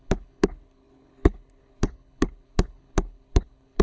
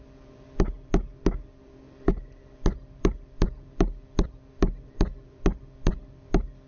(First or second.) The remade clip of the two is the first